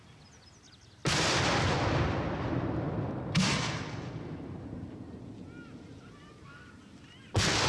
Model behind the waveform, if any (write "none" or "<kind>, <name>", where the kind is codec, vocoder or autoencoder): none